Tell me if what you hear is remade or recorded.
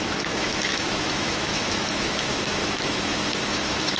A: remade